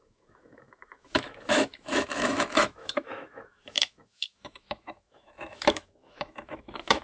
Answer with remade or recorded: remade